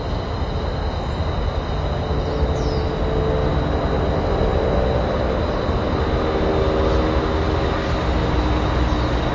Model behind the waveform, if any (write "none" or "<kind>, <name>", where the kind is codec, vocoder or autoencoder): none